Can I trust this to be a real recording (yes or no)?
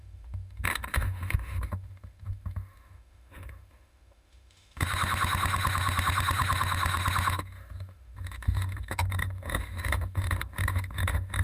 no